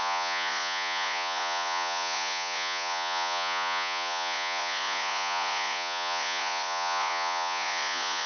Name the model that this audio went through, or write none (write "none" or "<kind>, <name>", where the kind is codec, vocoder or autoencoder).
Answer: vocoder, Vocos